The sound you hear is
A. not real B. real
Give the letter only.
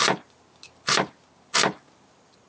B